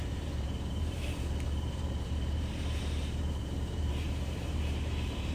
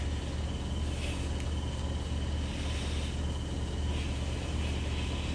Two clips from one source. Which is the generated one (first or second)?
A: first